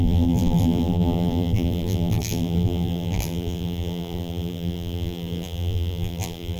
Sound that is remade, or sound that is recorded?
remade